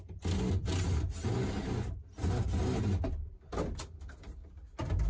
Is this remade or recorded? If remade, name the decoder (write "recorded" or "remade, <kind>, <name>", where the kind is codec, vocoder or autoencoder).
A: recorded